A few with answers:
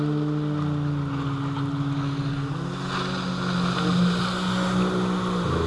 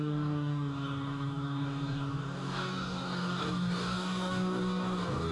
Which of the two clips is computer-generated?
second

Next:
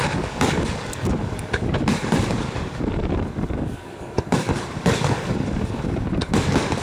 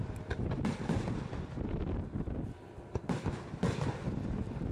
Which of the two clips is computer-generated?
first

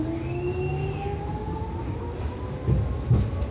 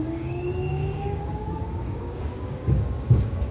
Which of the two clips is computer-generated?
second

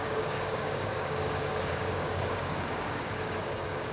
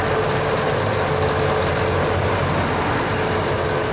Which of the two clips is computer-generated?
first